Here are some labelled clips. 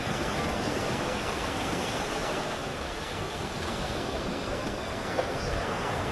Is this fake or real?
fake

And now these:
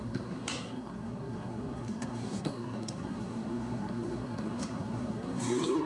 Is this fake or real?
fake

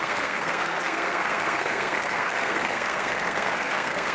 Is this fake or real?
fake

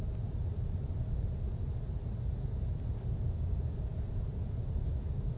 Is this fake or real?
real